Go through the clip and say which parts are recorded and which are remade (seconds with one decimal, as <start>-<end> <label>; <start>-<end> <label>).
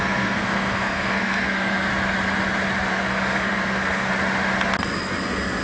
0.0-1.9 remade; 1.9-2.9 recorded; 2.9-4.1 remade; 4.1-5.6 recorded